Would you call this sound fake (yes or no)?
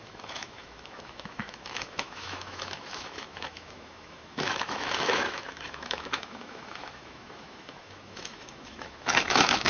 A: yes